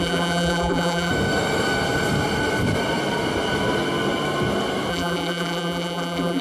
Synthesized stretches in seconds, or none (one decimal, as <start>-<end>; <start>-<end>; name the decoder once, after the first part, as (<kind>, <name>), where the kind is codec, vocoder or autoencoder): 0.0-1.1 (vocoder, BigVGAN v2); 4.9-6.4